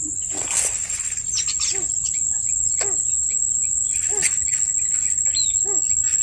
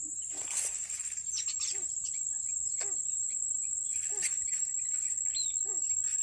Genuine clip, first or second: first